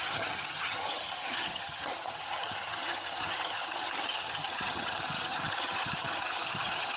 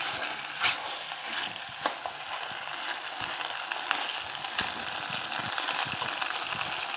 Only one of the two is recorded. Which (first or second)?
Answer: second